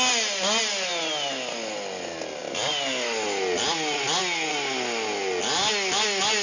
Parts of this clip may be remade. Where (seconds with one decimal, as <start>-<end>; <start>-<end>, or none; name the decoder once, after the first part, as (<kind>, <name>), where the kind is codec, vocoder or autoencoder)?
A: none